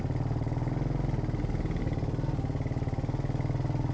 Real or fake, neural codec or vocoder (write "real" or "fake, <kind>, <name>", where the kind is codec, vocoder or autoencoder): real